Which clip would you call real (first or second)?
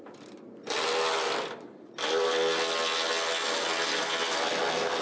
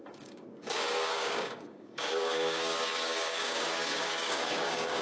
first